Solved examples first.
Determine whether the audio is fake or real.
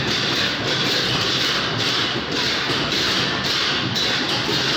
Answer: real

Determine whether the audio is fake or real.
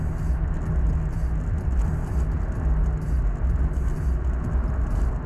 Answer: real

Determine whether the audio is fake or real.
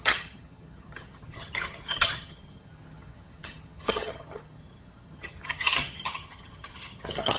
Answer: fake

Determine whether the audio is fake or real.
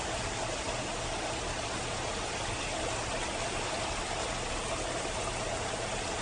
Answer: real